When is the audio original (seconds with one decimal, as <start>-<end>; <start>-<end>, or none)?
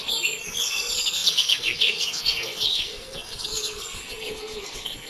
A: none